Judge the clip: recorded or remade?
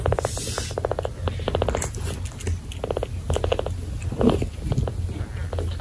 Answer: recorded